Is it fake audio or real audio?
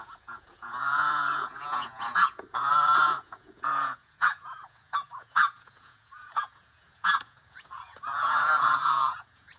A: fake